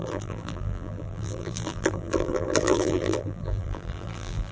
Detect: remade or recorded remade